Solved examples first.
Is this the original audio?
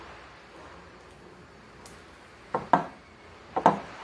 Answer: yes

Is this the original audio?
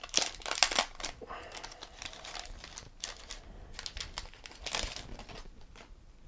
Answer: yes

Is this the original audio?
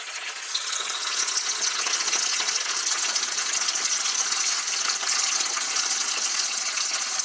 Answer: no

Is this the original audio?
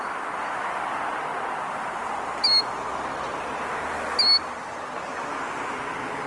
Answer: yes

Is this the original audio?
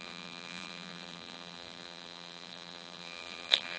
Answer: no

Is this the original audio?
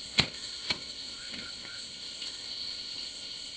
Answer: no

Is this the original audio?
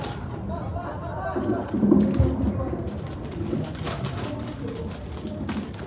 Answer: yes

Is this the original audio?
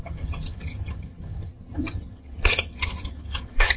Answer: no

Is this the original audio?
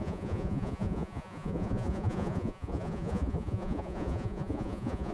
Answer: no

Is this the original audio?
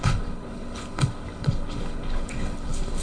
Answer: no